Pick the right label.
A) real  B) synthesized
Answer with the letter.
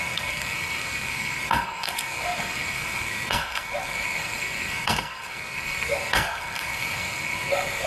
B